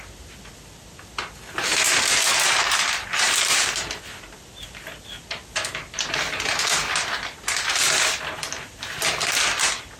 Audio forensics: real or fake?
real